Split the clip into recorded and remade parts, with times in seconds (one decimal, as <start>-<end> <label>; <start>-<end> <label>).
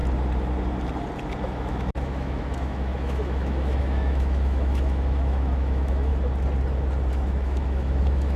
0.0-1.4 recorded; 1.4-6.1 remade; 6.1-7.1 recorded; 7.1-8.4 remade